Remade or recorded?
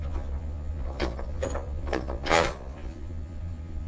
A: remade